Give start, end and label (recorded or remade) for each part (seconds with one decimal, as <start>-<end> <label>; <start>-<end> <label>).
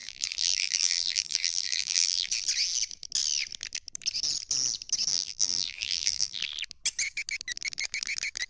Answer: 0.0-2.3 remade; 2.3-5.1 recorded; 5.1-6.4 remade; 6.4-8.5 recorded